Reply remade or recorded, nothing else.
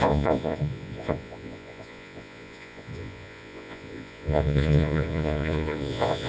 remade